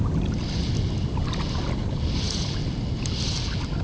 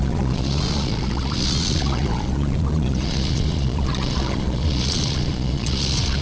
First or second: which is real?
first